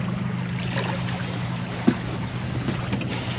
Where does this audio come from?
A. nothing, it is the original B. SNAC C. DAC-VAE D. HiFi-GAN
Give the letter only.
A